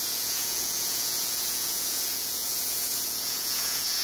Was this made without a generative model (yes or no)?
no